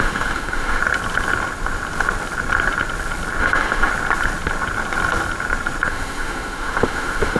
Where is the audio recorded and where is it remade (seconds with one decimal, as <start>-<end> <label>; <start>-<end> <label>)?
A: 0.0-0.8 remade; 0.8-3.4 recorded; 3.4-3.9 remade; 3.9-5.9 recorded; 5.9-7.4 remade